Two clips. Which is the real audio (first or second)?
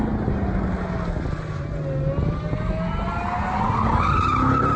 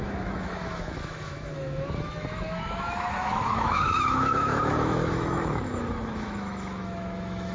first